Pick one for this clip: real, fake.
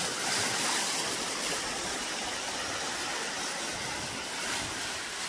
real